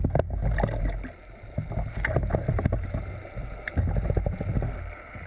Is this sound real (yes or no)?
yes